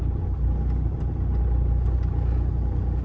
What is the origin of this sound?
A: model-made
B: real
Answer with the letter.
B